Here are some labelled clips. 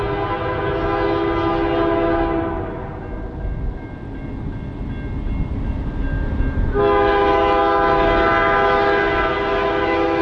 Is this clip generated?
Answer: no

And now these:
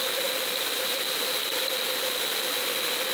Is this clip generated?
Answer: no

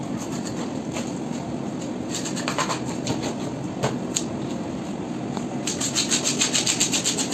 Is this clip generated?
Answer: no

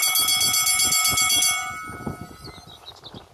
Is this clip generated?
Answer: no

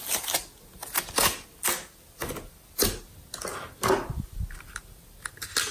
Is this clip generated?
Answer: no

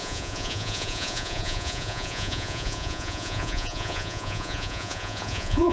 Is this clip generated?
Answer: yes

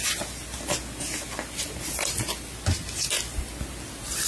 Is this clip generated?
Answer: no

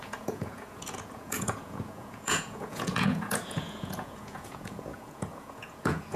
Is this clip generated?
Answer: yes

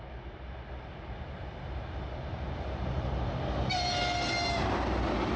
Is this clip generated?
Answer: no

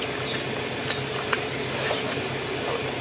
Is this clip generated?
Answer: no